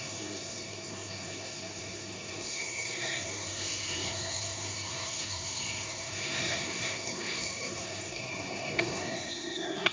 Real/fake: fake